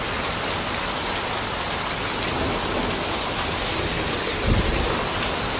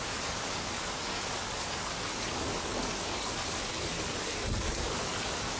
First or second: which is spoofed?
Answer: second